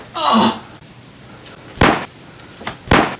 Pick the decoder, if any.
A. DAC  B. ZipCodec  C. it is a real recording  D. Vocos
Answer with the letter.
C